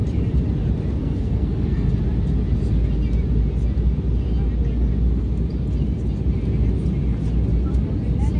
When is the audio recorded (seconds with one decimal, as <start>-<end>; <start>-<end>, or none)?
0.0-1.0; 1.9-8.4